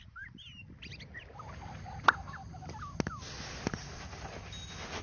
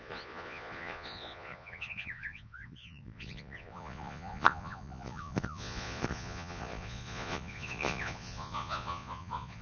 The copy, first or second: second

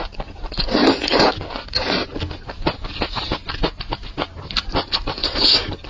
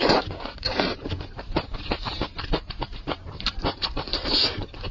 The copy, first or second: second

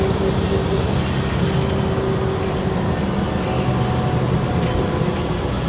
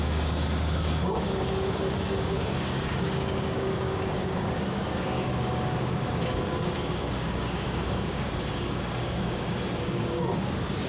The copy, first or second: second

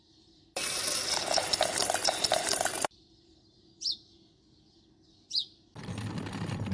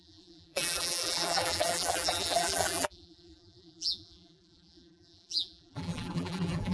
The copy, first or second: second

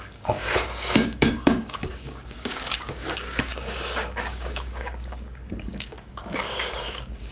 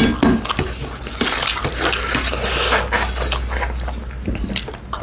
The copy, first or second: first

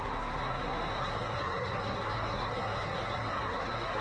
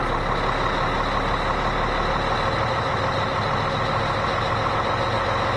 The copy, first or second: first